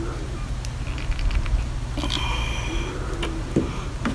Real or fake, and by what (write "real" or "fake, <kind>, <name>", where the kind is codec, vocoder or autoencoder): real